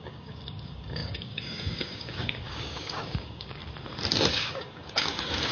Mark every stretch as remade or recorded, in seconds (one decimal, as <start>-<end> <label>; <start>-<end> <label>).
0.0-3.6 remade; 3.6-4.3 recorded; 4.3-5.5 remade